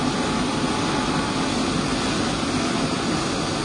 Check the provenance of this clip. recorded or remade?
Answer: recorded